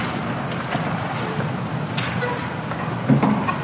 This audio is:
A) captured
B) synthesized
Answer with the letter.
A